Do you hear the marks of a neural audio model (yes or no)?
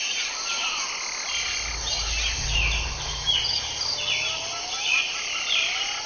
no